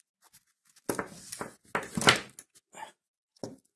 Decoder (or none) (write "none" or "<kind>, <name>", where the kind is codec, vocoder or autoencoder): none